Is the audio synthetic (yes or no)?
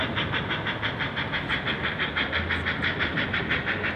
no